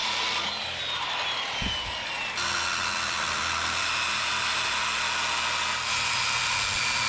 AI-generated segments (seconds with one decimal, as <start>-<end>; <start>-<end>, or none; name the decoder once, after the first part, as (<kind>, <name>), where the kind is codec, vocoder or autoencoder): none